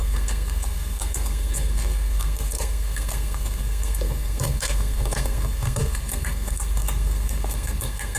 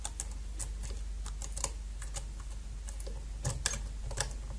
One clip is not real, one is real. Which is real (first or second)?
second